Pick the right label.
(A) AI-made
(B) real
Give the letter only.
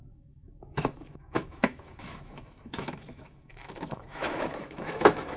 A